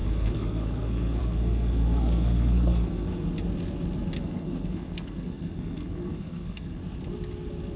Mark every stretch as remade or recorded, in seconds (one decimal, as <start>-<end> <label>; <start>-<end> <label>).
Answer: 0.0-3.1 remade; 3.1-4.2 recorded; 4.2-6.8 remade; 6.8-7.8 recorded